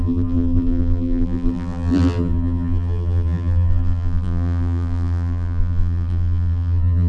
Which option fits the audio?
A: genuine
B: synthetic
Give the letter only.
B